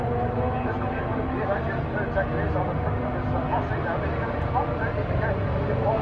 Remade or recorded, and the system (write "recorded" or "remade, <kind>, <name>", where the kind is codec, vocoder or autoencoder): recorded